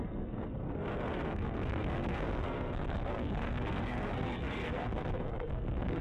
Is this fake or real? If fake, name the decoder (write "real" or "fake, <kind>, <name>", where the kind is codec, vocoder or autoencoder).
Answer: fake, codec, SNAC